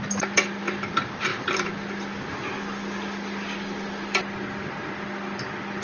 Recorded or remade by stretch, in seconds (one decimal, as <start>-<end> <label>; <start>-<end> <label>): 0.0-5.8 recorded